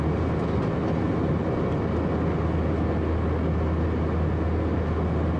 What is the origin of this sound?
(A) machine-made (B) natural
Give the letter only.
B